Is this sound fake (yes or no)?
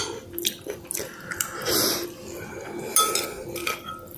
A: no